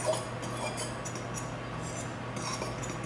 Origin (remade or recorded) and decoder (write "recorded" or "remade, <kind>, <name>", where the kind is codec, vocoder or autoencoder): recorded